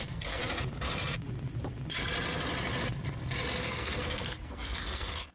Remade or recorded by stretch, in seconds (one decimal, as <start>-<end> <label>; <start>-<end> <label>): 0.0-0.4 remade; 0.4-3.6 recorded; 3.6-5.3 remade